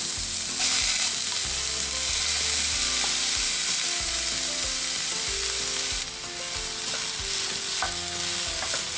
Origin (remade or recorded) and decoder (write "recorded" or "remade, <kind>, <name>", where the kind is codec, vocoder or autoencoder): recorded